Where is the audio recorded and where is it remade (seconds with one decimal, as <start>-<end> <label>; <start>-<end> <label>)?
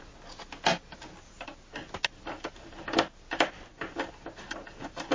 0.0-5.1 recorded